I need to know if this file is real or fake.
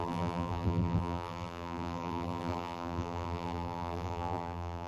fake